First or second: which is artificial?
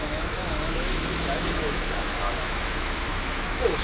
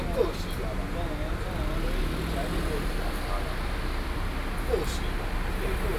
first